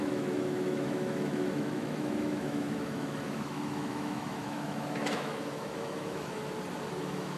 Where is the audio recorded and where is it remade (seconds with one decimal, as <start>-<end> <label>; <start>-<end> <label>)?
0.0-6.4 remade; 6.4-7.0 recorded; 7.0-7.4 remade